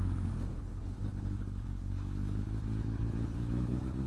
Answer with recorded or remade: remade